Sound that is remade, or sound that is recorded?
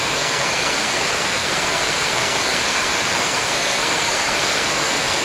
remade